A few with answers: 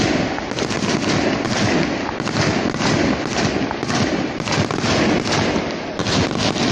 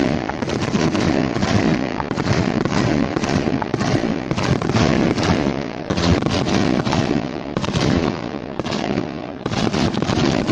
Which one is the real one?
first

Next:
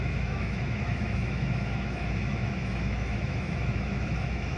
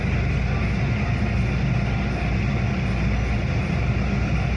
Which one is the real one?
second